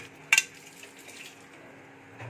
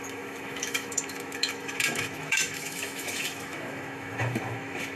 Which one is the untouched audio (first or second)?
first